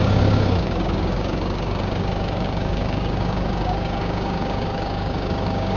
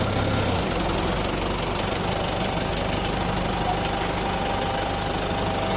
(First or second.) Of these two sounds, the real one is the second